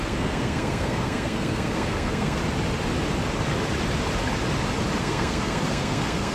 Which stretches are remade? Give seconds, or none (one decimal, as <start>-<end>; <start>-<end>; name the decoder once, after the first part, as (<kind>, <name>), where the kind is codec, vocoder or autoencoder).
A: 0.0-2.4 (codec, SNAC); 5.0-6.3